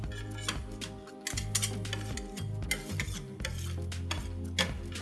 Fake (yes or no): no